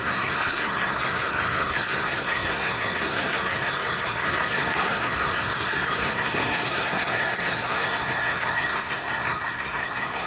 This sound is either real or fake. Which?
fake